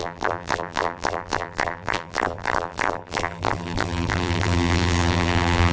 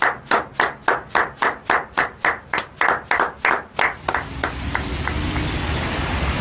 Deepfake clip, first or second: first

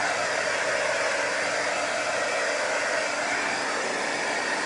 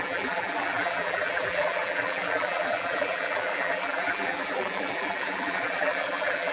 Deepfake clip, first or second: second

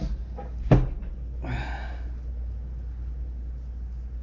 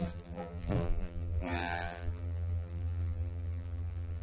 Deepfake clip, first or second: second